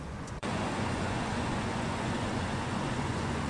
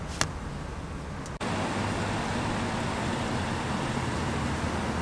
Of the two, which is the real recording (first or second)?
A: second